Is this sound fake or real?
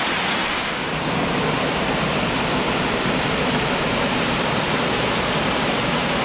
real